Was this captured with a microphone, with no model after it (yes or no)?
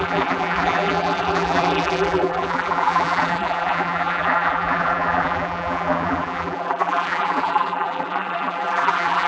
no